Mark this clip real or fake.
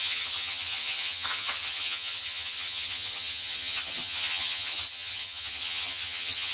fake